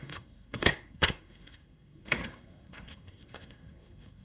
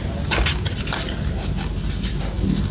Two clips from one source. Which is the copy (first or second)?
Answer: first